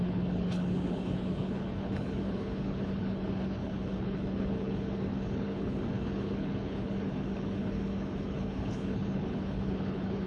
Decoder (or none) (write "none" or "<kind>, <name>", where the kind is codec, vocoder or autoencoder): codec, HILCodec